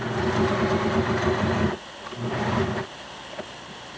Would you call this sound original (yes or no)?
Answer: yes